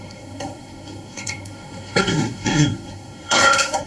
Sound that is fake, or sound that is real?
fake